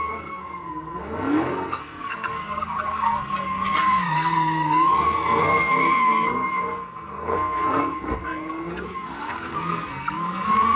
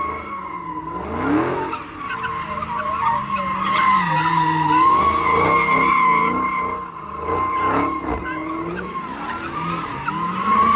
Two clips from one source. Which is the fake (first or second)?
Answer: first